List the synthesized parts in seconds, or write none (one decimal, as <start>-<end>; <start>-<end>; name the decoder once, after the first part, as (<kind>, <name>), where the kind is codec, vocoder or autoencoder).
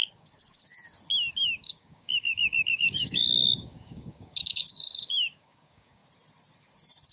0.0-0.6 (codec, DAC); 1.3-6.0